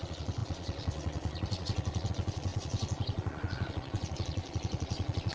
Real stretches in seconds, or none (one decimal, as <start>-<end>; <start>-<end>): none